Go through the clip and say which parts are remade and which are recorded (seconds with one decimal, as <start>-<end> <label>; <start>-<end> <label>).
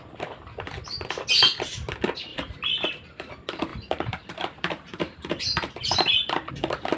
0.0-2.3 recorded; 2.3-3.3 remade; 3.3-3.7 recorded; 3.7-6.5 remade; 6.5-7.0 recorded